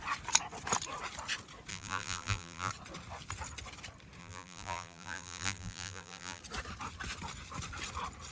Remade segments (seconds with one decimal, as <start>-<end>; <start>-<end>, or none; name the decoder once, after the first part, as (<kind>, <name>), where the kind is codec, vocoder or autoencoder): 1.7-2.7 (vocoder, BigVGAN v2); 4.2-6.4